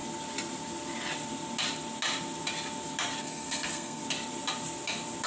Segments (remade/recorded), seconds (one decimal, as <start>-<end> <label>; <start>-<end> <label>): 0.0-3.2 recorded; 3.2-4.0 remade; 4.0-5.3 recorded